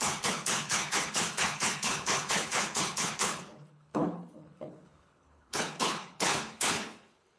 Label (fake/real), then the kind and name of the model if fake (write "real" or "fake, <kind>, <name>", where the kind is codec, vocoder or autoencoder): fake, codec, HILCodec